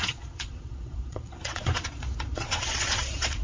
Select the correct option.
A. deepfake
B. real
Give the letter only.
A